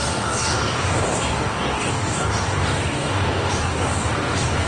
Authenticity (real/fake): fake